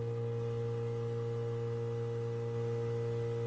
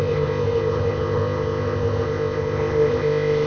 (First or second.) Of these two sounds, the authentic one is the first